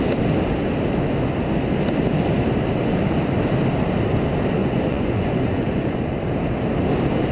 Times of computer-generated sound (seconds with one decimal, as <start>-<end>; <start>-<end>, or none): 4.6-6.0

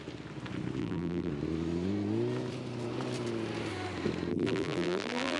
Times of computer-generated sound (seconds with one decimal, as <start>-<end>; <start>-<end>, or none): 0.8-1.3; 4.3-5.4

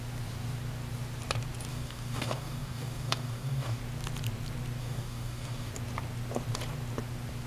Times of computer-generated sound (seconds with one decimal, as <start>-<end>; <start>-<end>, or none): 1.7-3.8; 4.8-5.7